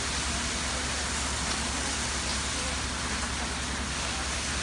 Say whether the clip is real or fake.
real